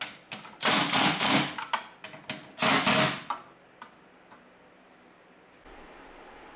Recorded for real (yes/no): yes